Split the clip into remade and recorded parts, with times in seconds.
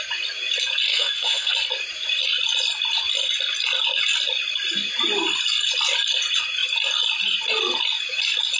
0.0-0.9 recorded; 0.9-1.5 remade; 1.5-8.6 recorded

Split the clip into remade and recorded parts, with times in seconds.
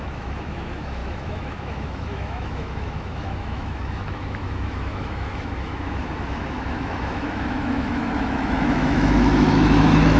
0.0-10.2 remade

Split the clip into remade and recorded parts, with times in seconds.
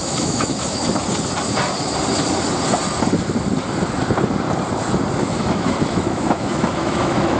0.0-0.8 remade; 0.8-5.2 recorded; 5.2-7.4 remade